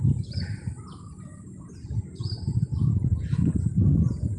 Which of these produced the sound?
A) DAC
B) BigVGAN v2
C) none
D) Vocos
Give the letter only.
C